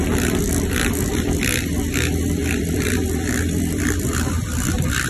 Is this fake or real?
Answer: fake